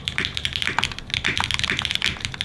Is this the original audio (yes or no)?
yes